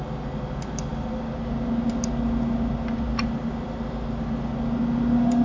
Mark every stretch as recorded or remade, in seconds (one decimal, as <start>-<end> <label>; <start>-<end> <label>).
0.0-5.4 recorded